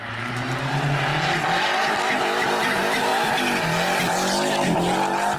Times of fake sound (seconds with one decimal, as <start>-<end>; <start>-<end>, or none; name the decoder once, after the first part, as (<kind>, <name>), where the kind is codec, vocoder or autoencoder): none